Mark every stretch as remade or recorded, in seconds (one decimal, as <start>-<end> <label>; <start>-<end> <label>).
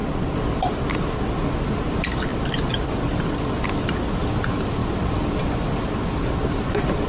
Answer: 0.0-7.1 recorded